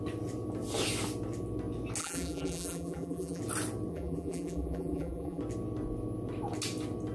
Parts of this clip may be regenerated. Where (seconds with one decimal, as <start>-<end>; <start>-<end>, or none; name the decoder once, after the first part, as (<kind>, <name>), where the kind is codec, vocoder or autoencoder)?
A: 2.0-3.4 (vocoder, BigVGAN v2); 3.9-5.4